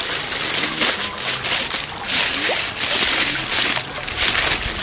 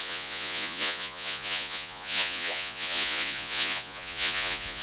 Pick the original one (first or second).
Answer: first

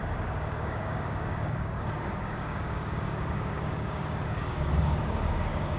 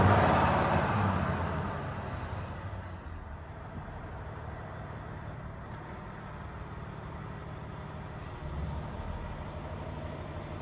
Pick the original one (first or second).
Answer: second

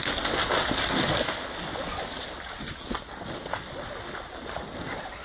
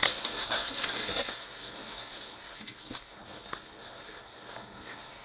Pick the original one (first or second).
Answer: first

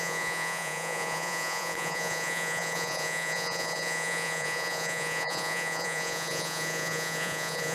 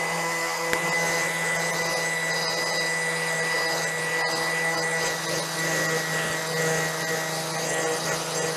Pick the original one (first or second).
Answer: second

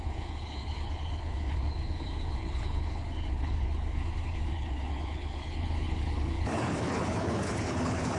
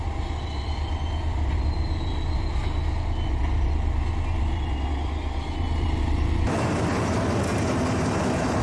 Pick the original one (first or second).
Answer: second